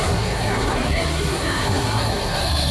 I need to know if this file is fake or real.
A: fake